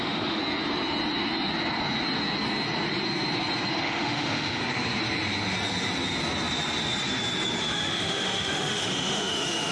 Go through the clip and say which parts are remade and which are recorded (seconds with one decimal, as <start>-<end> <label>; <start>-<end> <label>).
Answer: 0.0-0.4 remade; 0.4-3.7 recorded; 3.7-4.6 remade; 4.6-7.6 recorded; 7.6-9.7 remade